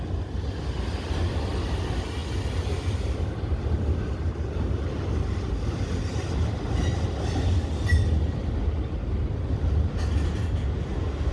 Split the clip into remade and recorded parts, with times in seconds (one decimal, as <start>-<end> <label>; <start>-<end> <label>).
0.0-11.3 recorded